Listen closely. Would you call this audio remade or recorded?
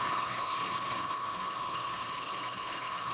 remade